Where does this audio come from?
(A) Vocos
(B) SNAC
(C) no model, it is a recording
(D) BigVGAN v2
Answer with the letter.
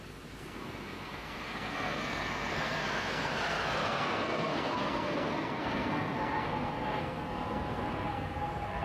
B